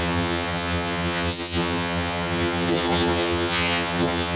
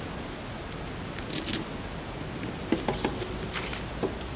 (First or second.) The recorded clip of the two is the second